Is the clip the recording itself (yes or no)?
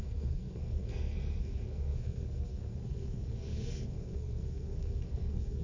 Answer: no